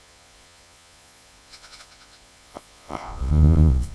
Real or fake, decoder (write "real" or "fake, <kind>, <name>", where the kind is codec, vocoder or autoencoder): fake, vocoder, Vocos